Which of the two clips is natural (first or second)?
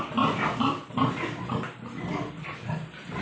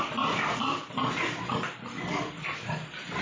first